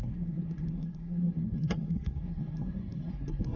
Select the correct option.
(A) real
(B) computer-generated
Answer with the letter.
B